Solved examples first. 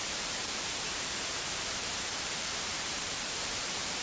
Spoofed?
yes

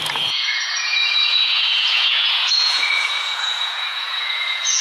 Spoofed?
yes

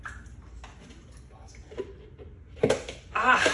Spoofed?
no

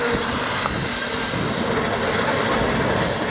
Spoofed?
no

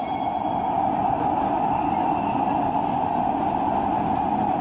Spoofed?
no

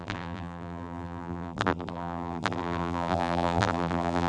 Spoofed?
yes